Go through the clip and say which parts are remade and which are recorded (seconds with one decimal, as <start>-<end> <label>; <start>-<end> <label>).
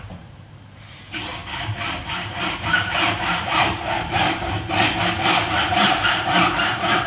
0.0-1.4 remade; 1.4-2.4 recorded; 2.4-4.2 remade; 4.2-5.6 recorded; 5.6-7.1 remade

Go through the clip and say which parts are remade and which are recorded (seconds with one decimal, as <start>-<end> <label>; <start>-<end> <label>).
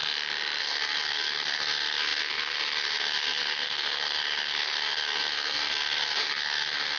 0.0-0.6 recorded; 0.6-7.0 remade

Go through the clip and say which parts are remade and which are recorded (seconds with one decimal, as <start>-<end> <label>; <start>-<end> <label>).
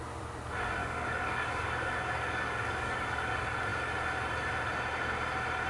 0.0-0.8 recorded; 0.8-3.3 remade; 3.3-5.7 recorded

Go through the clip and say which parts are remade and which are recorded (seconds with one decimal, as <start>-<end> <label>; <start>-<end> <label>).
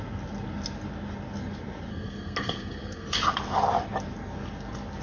0.0-1.9 recorded; 1.9-3.2 remade; 3.2-5.0 recorded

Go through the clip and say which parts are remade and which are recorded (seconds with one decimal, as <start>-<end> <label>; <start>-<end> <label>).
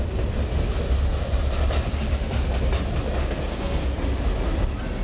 0.0-3.2 recorded; 3.2-3.8 remade; 3.8-5.0 recorded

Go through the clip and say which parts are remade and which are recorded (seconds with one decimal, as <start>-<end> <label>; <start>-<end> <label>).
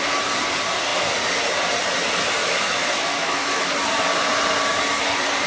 0.0-2.4 recorded; 2.4-3.7 remade; 3.7-5.5 recorded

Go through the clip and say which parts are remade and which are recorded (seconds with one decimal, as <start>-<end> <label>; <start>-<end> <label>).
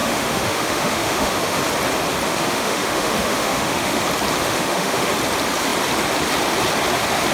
0.0-1.6 remade; 1.6-2.3 recorded; 2.3-4.0 remade; 4.0-4.4 recorded; 4.4-5.1 remade; 5.1-7.3 recorded